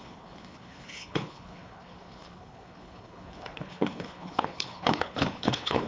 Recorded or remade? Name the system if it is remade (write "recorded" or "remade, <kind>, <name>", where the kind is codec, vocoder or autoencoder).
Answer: remade, codec, HILCodec